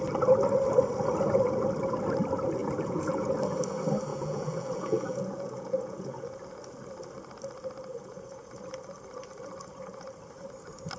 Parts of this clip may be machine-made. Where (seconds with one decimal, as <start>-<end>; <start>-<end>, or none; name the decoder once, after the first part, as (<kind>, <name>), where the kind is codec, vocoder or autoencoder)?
2.6-3.3 (vocoder, Vocos); 4.1-6.4; 7.9-8.5